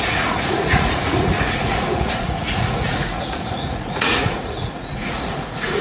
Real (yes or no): no